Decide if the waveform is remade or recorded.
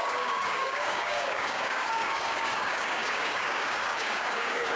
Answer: remade